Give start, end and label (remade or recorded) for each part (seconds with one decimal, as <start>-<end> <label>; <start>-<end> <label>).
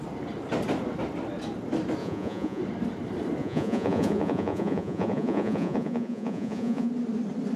0.0-2.0 recorded; 2.0-2.6 remade; 2.6-3.4 recorded; 3.4-6.9 remade; 6.9-7.6 recorded